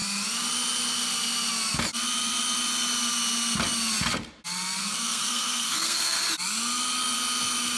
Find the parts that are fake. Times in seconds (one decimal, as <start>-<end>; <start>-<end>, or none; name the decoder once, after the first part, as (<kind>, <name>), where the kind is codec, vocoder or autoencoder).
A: 4.8-6.2 (codec, SNAC)